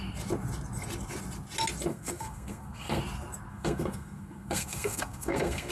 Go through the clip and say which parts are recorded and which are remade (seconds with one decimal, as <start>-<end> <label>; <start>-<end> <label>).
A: 0.0-1.9 recorded; 1.9-3.0 remade; 3.0-3.5 recorded; 3.5-5.7 remade